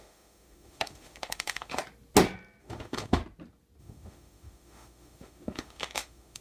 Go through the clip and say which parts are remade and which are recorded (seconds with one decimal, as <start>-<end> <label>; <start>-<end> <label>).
0.0-1.8 remade; 1.8-2.6 recorded; 2.6-3.2 remade; 3.2-3.8 recorded; 3.8-6.4 remade